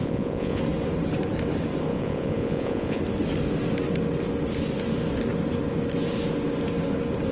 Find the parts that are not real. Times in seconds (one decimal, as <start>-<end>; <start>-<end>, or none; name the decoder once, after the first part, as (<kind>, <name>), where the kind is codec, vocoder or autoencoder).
0.0-0.6 (vocoder, Vocos); 1.9-3.0